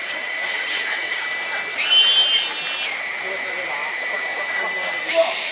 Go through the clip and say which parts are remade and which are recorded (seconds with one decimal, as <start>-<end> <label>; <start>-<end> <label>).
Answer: 0.0-1.2 remade; 1.2-5.5 recorded